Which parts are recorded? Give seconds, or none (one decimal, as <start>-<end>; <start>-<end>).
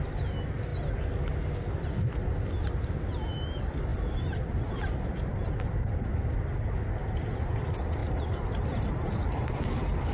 0.0-3.9; 5.5-10.1